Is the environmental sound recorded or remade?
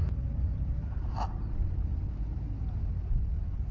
recorded